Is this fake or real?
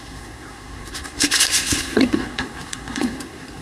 fake